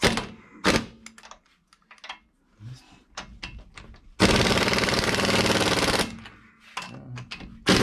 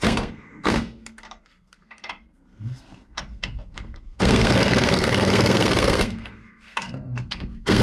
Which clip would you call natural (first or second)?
first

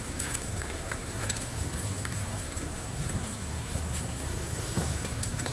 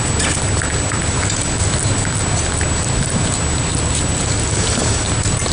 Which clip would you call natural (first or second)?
second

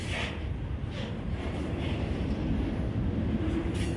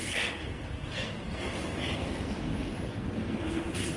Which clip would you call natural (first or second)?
first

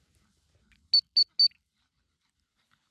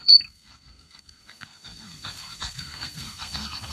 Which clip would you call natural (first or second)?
first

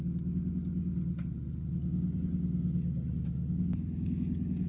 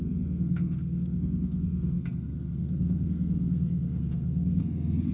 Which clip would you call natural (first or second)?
first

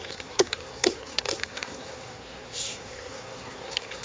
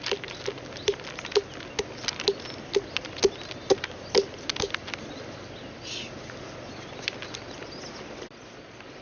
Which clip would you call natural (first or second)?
second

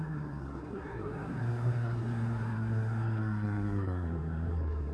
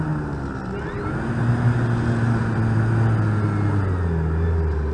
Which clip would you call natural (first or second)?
second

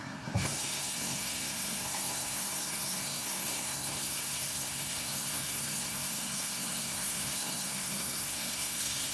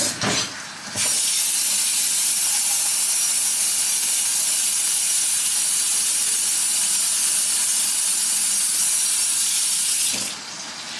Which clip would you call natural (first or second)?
second